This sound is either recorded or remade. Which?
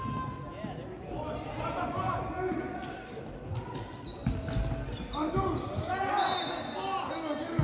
recorded